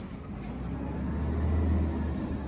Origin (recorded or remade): recorded